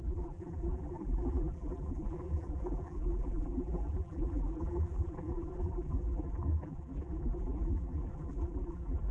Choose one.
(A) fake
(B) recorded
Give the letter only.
A